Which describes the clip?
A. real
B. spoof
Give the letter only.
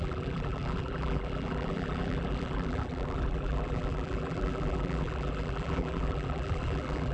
B